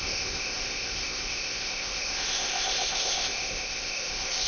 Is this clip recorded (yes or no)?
no